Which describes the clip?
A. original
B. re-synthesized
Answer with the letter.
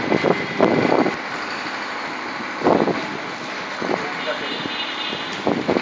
A